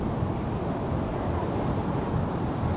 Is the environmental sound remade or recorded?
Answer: recorded